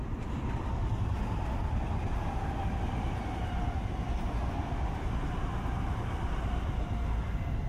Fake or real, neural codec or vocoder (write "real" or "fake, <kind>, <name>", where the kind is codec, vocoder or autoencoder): real